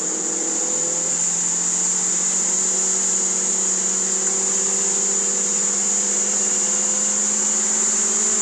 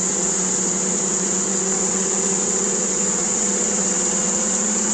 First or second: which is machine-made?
second